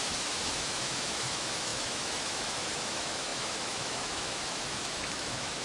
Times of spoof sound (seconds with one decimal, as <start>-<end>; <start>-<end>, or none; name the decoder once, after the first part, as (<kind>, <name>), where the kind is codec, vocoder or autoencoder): 0.0-5.6 (autoencoder, DAC-VAE)